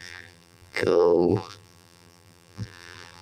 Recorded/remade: remade